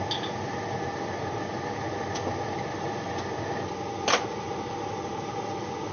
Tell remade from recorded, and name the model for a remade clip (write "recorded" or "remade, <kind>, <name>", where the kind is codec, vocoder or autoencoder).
recorded